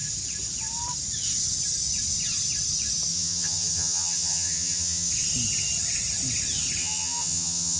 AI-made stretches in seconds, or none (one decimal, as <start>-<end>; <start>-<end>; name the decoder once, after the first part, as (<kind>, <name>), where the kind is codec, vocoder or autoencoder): 3.1-5.1 (vocoder, HiFi-GAN); 6.8-7.8